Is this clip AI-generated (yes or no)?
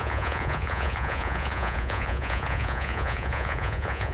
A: yes